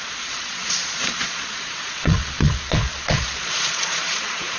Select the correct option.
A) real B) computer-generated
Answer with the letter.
B